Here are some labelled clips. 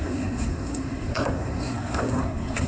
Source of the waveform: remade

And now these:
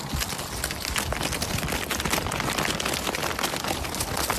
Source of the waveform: recorded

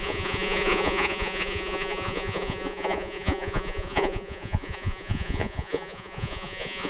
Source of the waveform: remade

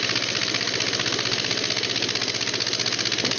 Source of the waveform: recorded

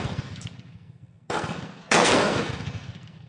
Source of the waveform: remade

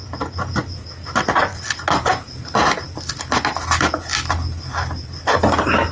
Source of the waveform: recorded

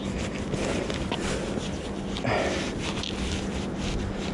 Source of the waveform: recorded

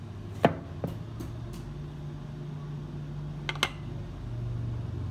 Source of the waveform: recorded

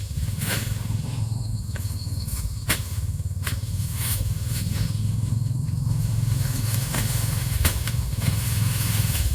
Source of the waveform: remade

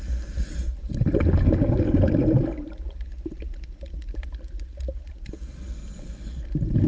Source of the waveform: recorded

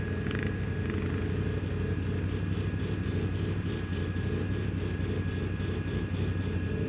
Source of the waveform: recorded